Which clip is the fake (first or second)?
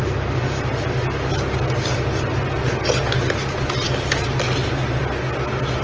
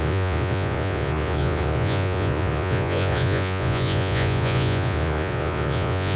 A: second